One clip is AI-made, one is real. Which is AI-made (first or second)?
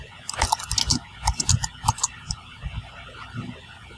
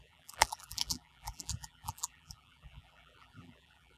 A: second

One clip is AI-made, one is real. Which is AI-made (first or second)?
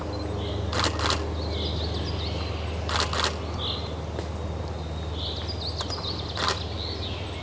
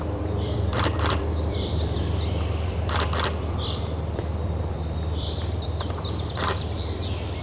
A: second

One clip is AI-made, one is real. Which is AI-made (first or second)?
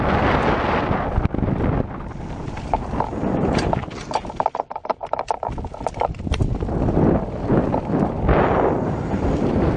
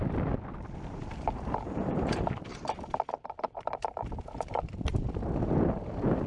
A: second